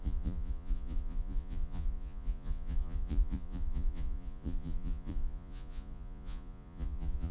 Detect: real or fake fake